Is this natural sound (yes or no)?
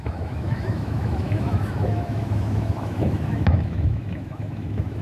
no